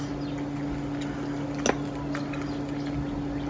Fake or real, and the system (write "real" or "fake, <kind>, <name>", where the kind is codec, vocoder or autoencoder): real